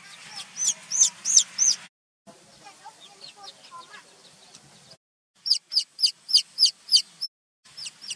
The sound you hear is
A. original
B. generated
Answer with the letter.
A